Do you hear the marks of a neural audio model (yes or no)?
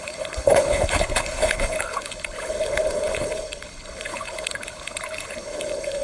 yes